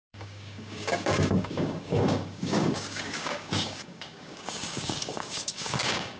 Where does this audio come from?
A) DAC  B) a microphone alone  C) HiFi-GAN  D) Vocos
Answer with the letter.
A